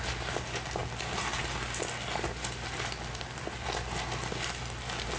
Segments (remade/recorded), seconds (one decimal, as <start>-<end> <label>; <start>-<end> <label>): 0.0-5.2 recorded

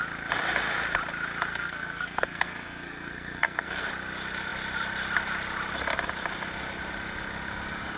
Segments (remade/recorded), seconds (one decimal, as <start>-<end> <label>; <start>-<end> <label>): 0.0-1.5 recorded; 1.5-3.9 remade; 3.9-8.0 recorded

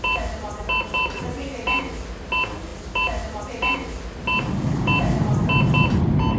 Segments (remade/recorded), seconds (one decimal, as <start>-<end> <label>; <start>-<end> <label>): 0.0-6.4 recorded

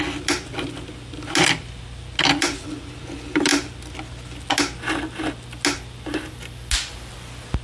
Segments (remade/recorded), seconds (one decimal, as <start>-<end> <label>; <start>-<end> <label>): 0.0-7.6 recorded

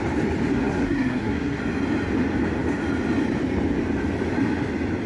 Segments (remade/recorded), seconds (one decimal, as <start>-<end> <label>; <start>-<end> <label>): 0.0-0.5 recorded; 0.5-1.6 remade; 1.6-5.1 recorded